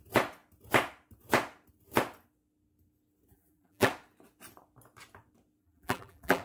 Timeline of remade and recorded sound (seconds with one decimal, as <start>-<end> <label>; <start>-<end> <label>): 0.0-3.3 recorded; 3.3-3.9 remade; 3.9-5.6 recorded; 5.6-6.4 remade